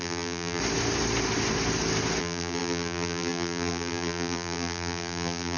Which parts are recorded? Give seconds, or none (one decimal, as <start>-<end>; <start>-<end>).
0.6-2.2

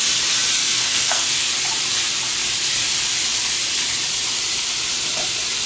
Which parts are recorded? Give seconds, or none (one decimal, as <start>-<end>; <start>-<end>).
0.0-0.6; 1.5-5.7

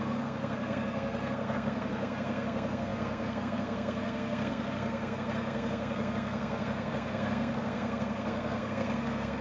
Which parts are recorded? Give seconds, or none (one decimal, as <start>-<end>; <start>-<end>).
none

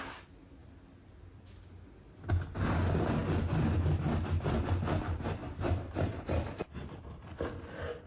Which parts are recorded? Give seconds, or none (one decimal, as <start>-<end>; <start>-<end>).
0.0-5.4; 7.0-8.1

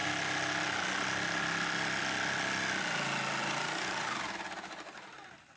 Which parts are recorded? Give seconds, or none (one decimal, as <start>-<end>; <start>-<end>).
0.0-5.6

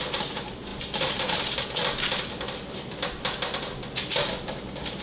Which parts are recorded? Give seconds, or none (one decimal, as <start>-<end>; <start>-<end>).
0.0-5.0

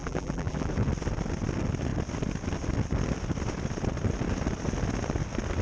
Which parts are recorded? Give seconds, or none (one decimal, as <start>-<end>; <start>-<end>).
0.7-5.6

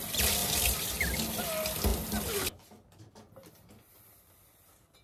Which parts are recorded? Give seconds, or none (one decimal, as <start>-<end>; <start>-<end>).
0.0-5.0